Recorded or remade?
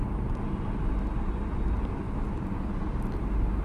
recorded